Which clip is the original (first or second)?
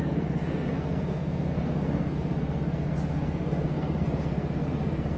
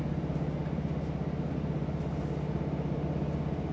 second